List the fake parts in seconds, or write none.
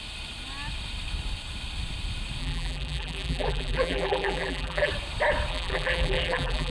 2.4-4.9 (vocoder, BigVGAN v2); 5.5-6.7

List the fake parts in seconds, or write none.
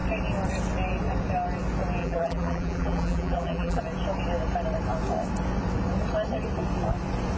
2.0-3.8 (vocoder, BigVGAN v2)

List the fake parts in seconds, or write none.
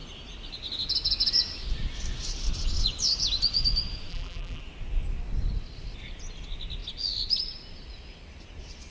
4.1-4.6 (vocoder, BigVGAN v2)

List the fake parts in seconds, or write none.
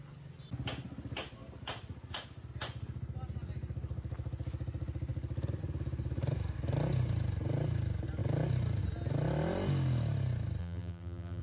10.6-11.4 (vocoder, BigVGAN v2)